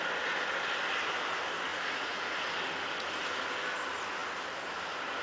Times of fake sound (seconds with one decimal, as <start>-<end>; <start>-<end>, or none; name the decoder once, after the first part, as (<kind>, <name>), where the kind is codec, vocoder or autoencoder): 1.7-2.2 (vocoder, Vocos)